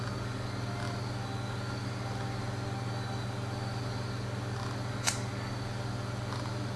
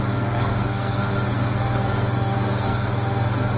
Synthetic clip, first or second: second